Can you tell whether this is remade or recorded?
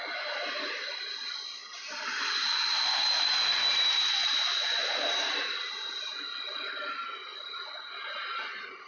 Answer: remade